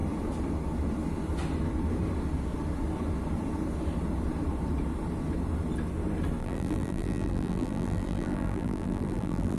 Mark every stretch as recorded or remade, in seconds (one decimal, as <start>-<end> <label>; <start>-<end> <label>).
0.0-6.4 recorded; 6.4-9.6 remade